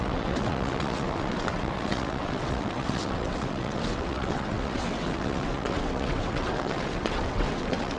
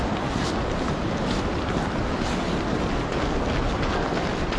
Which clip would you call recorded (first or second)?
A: second